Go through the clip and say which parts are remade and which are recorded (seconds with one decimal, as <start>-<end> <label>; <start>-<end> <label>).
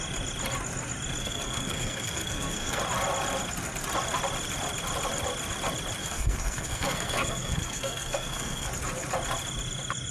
0.0-1.2 recorded; 1.2-2.8 remade; 2.8-6.0 recorded; 6.0-8.7 remade; 8.7-10.1 recorded